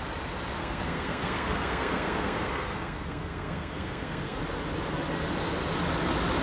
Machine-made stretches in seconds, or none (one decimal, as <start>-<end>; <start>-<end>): 0.6-4.4